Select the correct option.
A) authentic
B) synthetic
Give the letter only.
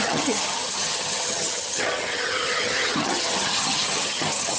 B